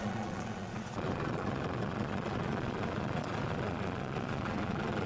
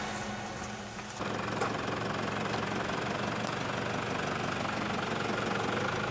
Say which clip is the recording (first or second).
second